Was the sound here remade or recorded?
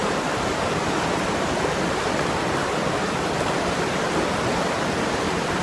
recorded